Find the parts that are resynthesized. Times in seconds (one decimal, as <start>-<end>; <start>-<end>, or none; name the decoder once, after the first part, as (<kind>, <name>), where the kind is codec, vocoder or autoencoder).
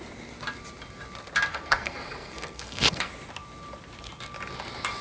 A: 1.5-3.1 (codec, SNAC)